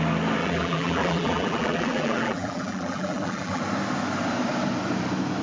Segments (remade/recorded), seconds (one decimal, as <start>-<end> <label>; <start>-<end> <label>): 0.0-0.4 recorded; 0.4-3.6 remade; 3.6-5.4 recorded